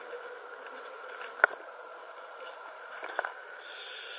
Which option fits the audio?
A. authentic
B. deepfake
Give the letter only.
A